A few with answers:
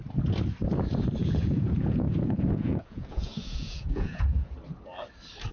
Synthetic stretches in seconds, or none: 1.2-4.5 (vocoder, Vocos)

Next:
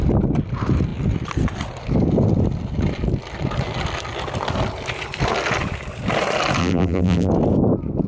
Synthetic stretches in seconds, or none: 6.6-7.3 (vocoder, BigVGAN v2)

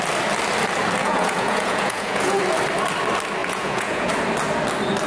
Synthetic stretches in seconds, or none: 1.0-2.4 (vocoder, Vocos); 3.4-4.1